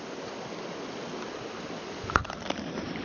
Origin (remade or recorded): recorded